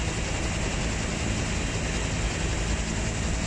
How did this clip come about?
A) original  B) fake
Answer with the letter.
A